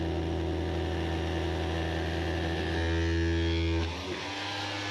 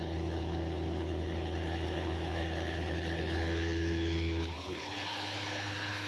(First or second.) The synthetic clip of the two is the second